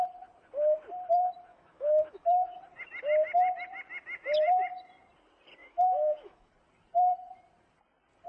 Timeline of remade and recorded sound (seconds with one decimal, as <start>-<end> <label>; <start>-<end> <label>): 0.0-1.5 recorded; 1.5-2.6 remade; 2.6-5.6 recorded; 5.6-6.5 remade; 6.5-8.3 recorded